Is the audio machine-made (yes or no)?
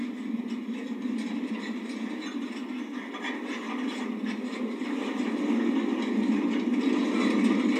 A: no